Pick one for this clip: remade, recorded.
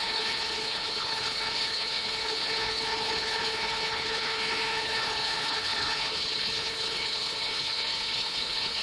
remade